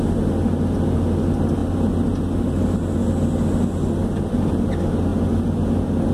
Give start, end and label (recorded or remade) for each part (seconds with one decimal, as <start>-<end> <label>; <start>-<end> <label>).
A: 0.0-6.1 recorded